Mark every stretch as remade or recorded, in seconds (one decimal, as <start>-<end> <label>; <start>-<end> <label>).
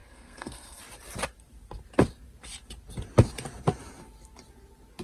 0.0-0.8 remade; 0.8-5.0 recorded